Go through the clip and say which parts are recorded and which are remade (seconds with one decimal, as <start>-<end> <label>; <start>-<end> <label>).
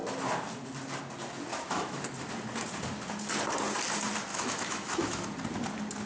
0.0-1.5 recorded; 1.5-2.0 remade; 2.0-4.3 recorded; 4.3-5.2 remade; 5.2-6.1 recorded